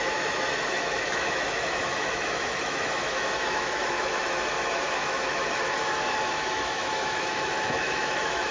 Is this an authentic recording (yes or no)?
no